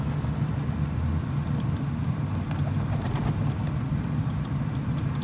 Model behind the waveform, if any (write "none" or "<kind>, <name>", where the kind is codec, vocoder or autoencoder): none